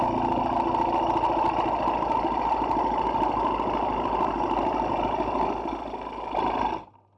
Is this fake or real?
real